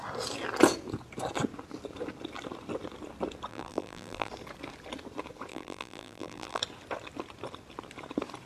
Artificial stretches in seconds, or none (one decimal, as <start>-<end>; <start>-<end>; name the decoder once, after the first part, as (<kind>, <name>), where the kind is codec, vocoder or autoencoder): 3.5-4.3 (vocoder, BigVGAN v2); 5.5-6.6